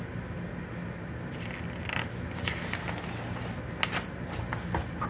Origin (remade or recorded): recorded